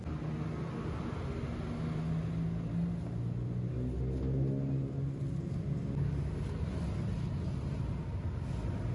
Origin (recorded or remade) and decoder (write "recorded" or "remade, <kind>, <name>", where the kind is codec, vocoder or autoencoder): recorded